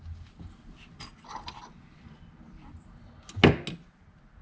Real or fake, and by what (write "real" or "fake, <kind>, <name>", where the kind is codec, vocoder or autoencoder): real